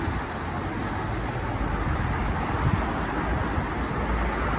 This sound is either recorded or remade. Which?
recorded